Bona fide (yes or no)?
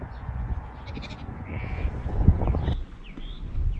no